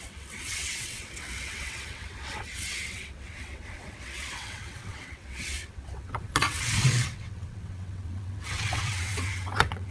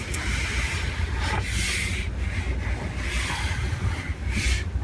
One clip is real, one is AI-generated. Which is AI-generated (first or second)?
first